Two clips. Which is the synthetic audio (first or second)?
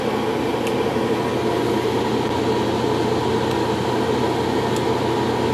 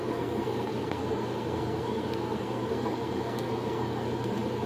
second